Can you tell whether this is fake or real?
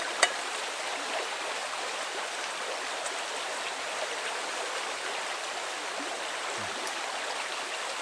real